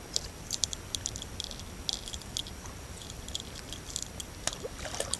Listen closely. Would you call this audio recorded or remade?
remade